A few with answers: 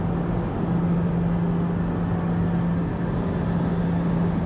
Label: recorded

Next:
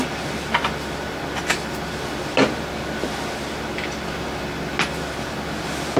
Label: recorded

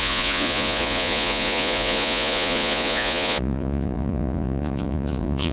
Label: remade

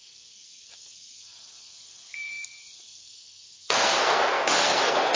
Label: remade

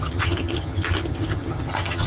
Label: remade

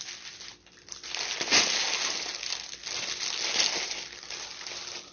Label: recorded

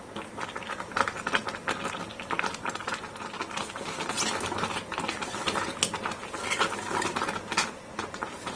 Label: recorded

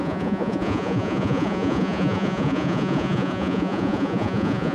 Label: remade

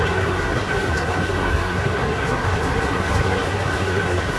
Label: remade